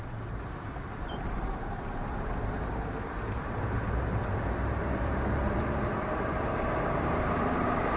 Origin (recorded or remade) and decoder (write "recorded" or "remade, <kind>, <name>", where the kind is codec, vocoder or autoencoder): remade, vocoder, BigVGAN v2